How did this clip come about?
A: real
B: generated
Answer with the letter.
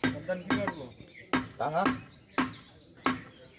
A